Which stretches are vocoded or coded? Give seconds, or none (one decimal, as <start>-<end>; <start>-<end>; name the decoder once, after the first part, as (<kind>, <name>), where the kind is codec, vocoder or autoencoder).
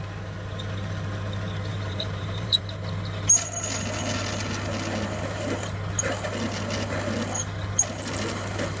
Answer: 1.7-2.6 (vocoder, BigVGAN v2)